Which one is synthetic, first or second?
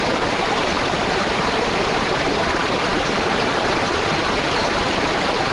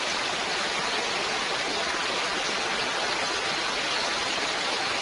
first